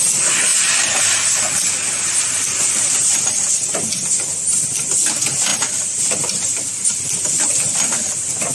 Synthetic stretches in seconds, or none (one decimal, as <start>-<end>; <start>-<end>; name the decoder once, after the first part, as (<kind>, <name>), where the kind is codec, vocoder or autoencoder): 0.5-3.5 (vocoder, BigVGAN v2); 5.5-7.0